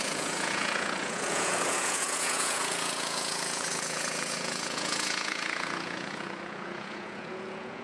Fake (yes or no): yes